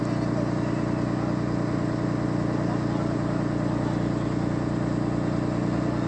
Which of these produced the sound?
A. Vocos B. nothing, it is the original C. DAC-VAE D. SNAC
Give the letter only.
B